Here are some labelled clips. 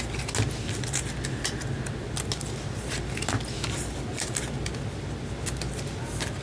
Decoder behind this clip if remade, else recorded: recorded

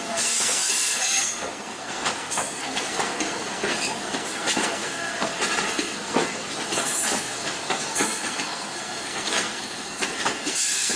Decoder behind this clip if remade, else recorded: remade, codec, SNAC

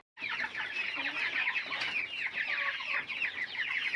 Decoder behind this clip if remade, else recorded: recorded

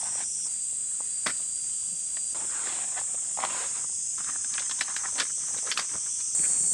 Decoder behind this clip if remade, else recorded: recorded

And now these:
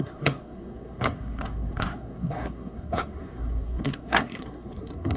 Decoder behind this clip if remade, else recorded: remade, codec, SNAC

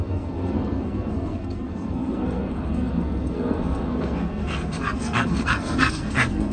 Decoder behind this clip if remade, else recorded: remade, codec, SNAC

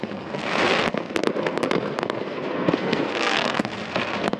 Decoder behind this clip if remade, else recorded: remade, codec, SNAC